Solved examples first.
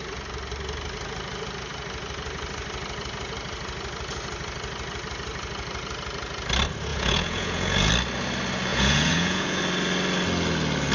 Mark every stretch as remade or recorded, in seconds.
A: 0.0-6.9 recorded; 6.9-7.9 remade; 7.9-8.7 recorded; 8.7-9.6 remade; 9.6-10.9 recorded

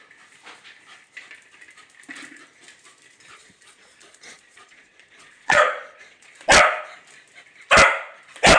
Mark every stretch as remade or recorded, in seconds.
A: 0.0-3.4 recorded; 3.4-6.3 remade; 6.3-8.6 recorded

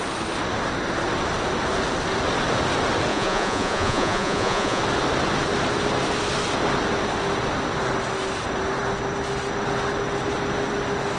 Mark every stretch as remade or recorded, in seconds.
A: 0.0-3.1 recorded; 3.1-4.8 remade; 4.8-11.2 recorded

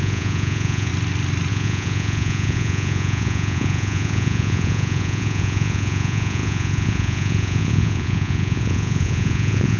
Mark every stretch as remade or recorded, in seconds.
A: 0.0-0.9 remade; 0.9-1.5 recorded; 1.5-9.8 remade

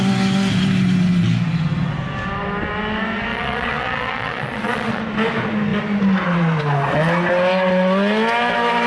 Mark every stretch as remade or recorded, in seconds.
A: 0.0-3.3 recorded; 3.3-5.0 remade; 5.0-8.9 recorded